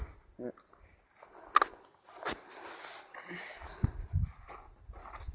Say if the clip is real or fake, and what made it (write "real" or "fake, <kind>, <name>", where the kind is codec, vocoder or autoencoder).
real